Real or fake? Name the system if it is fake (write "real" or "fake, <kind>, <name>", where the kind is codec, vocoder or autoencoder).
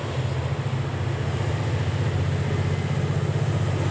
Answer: real